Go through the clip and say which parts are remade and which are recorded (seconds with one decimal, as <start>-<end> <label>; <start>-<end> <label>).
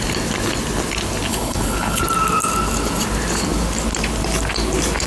0.0-1.3 recorded; 1.3-2.0 remade; 2.0-5.1 recorded